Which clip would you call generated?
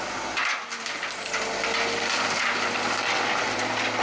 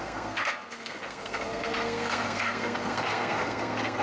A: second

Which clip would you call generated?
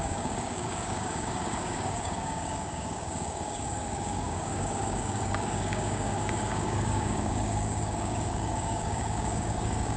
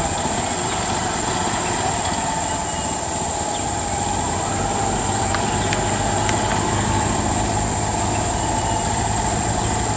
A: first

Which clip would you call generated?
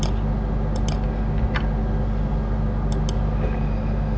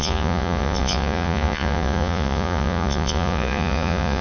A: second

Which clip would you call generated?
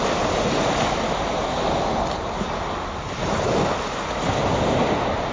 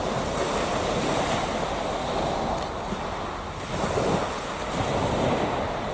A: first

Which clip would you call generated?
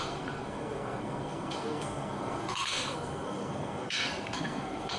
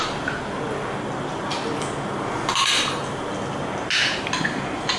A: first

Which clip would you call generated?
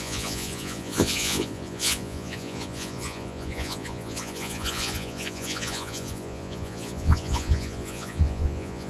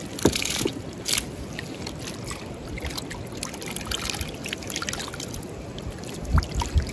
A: first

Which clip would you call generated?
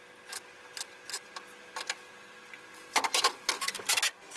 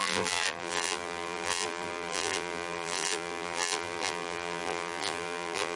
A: second